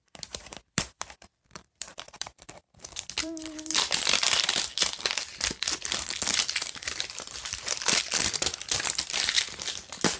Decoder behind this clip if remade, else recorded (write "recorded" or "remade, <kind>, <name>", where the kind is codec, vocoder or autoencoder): remade, vocoder, BigVGAN v2